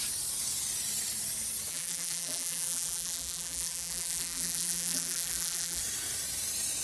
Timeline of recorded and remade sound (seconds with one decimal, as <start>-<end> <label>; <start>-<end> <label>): 0.0-1.7 recorded; 1.7-5.8 remade; 5.8-6.8 recorded